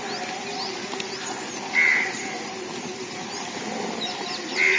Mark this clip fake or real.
real